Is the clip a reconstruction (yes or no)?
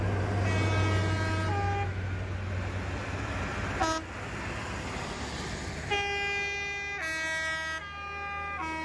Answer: no